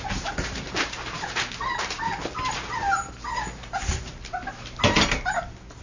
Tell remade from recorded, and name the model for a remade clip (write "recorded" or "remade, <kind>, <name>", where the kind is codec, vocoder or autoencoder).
recorded